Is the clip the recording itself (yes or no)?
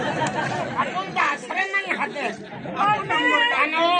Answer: yes